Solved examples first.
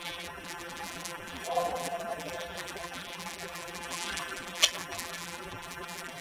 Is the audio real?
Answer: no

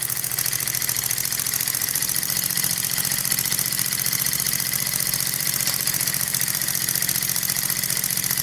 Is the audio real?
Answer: no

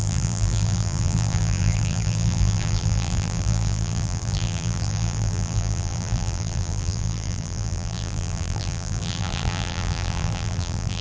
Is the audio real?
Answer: no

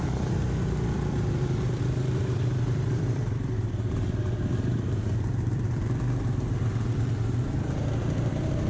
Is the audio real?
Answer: no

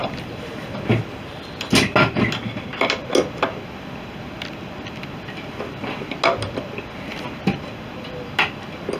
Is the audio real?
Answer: yes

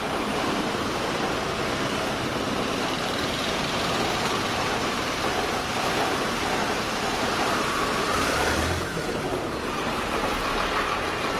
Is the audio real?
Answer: no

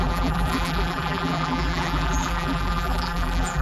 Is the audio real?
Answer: no